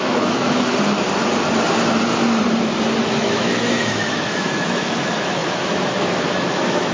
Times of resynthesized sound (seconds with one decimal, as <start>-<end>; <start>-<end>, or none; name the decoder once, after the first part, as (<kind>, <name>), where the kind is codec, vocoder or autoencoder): 0.0-0.7 (autoencoder, DAC-VAE); 3.1-6.9